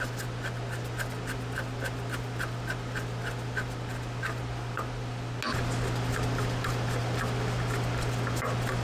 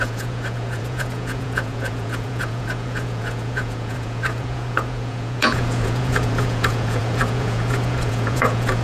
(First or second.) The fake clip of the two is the second